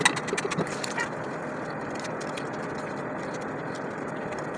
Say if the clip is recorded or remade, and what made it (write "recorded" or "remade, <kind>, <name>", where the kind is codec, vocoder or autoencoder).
recorded